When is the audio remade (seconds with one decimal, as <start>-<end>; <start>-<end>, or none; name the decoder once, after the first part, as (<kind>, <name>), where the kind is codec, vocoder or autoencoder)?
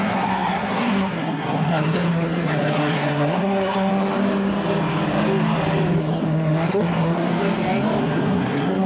0.0-3.9 (codec, SNAC); 6.0-7.3; 8.0-8.9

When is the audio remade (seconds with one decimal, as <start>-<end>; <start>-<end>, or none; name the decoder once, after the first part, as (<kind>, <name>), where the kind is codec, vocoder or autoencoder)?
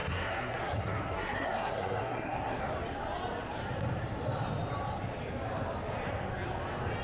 0.0-2.6 (codec, SNAC)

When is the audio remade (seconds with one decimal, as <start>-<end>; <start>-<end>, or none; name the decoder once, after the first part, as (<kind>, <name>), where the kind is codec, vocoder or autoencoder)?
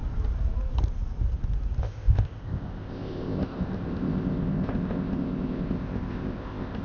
1.8-6.8 (codec, ZipCodec)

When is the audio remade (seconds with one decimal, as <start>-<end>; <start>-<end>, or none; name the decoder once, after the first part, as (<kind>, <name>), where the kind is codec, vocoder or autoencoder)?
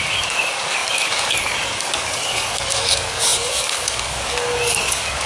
0.0-5.3 (codec, DAC)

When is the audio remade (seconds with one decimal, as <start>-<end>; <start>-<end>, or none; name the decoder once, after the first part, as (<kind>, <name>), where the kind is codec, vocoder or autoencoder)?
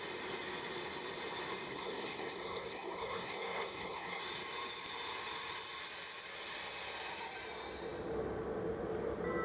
1.7-4.2 (codec, SNAC)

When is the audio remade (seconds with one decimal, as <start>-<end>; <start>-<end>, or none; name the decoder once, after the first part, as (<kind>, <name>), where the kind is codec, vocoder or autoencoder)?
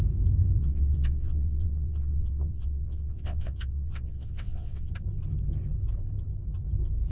0.6-4.9 (vocoder, WaveNeXt)